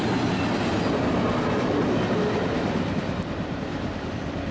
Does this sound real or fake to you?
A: real